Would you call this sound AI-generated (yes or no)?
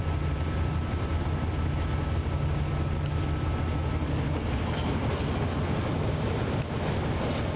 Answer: no